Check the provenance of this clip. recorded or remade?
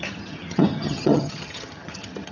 remade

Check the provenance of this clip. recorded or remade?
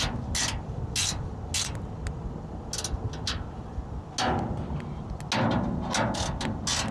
recorded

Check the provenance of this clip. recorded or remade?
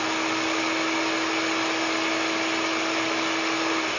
recorded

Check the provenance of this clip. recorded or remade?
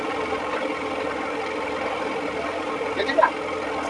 recorded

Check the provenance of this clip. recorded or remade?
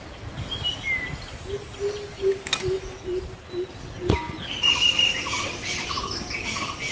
recorded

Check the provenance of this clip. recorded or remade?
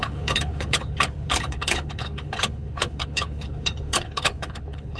remade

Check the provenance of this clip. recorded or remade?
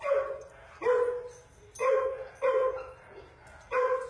recorded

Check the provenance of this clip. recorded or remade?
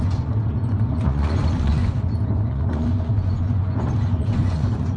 remade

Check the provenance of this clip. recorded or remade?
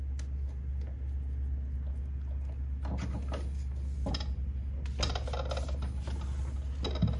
recorded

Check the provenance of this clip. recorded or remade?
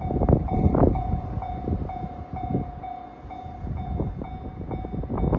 recorded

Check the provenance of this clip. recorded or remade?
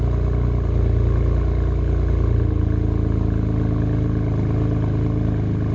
recorded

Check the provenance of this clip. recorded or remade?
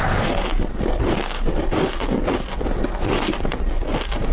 recorded